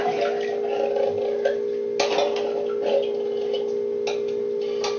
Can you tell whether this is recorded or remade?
recorded